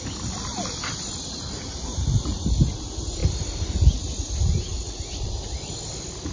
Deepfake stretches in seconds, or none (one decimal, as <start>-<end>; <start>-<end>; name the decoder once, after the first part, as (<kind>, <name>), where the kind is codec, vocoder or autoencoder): 3.2-3.7 (vocoder, BigVGAN v2); 4.7-5.3